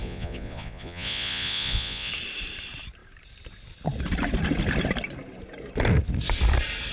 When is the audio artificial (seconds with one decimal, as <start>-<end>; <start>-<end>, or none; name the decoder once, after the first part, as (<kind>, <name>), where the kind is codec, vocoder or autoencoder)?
0.0-2.1 (vocoder, Vocos)